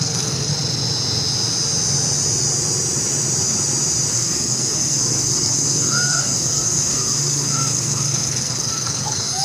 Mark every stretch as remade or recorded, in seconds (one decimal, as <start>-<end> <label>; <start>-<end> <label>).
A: 0.0-0.5 remade; 0.5-4.1 recorded; 4.1-9.4 remade